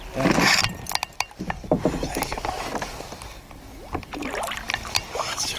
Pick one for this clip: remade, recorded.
recorded